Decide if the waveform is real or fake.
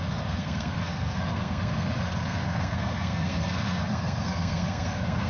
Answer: fake